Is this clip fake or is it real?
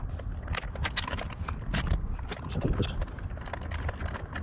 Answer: real